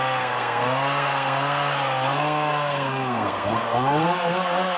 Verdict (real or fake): fake